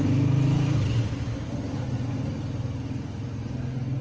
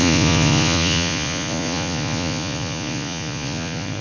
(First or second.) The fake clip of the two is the second